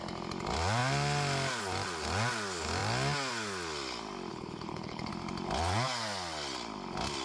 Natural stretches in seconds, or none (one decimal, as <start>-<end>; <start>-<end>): 0.0-4.3; 5.1-7.2